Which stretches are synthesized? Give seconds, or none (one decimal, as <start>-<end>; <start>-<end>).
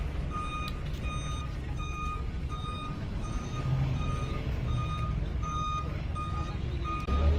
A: 1.4-4.7; 5.3-6.5